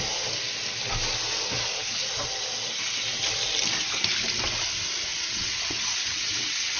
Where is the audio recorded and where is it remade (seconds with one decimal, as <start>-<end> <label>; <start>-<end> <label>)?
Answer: 0.0-5.1 recorded; 5.1-6.8 remade